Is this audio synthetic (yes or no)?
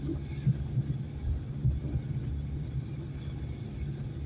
no